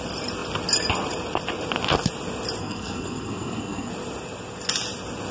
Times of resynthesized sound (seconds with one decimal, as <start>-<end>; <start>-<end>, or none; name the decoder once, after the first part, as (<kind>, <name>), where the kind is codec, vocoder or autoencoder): 2.6-3.9 (codec, SNAC)